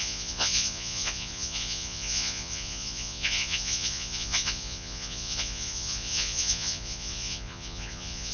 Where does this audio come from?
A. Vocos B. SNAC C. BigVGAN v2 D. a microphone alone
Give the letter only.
A